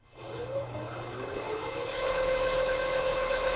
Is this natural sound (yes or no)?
no